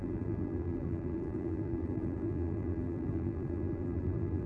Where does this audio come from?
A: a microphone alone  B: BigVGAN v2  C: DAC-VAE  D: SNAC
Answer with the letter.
B